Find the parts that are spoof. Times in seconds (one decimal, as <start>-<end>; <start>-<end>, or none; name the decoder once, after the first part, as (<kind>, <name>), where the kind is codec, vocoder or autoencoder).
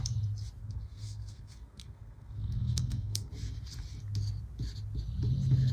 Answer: 0.6-3.3 (codec, SNAC)